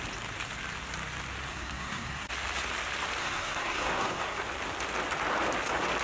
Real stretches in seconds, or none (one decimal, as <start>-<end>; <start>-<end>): 0.0-1.5; 2.3-3.2; 4.4-6.0